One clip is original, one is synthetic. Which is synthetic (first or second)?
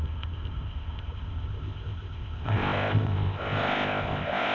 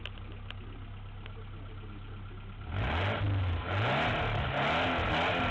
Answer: first